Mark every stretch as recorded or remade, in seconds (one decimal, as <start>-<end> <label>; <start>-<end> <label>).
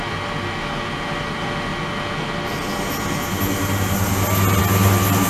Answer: 0.0-5.3 recorded